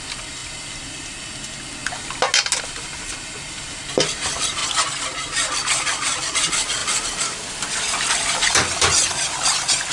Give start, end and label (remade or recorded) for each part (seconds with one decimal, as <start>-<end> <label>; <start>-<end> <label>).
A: 0.0-9.9 recorded